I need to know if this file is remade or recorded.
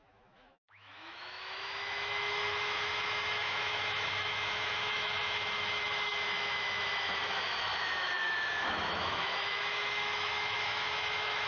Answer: remade